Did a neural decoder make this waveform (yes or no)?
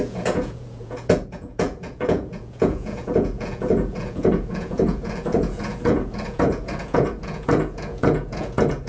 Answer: yes